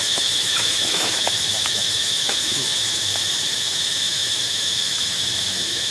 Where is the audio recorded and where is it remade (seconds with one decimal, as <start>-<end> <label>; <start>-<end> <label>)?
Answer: 0.0-5.9 remade